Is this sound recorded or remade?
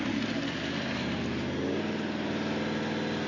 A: recorded